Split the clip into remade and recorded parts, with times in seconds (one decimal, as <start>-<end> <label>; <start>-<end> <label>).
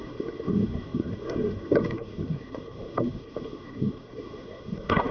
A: 0.0-5.1 remade